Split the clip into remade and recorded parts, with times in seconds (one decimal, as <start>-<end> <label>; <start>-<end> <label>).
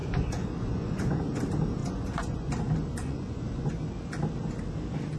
0.0-1.2 remade; 1.2-1.8 recorded; 1.8-2.5 remade; 2.5-3.0 recorded; 3.0-3.7 remade; 3.7-5.2 recorded